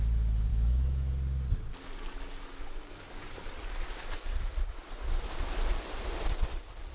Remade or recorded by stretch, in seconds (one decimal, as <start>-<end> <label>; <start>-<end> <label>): 0.0-0.5 recorded; 0.5-1.1 remade; 1.1-6.9 recorded